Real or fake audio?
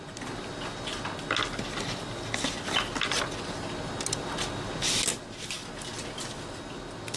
real